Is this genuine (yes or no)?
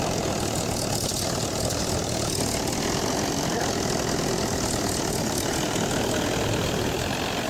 yes